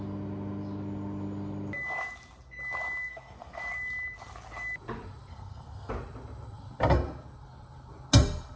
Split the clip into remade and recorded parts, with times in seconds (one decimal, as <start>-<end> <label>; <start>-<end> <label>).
0.0-3.1 recorded; 3.1-3.6 remade; 3.6-5.3 recorded; 5.3-5.9 remade; 5.9-8.6 recorded